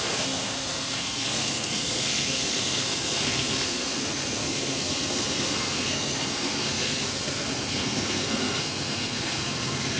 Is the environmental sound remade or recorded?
remade